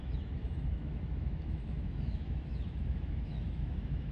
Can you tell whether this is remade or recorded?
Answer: remade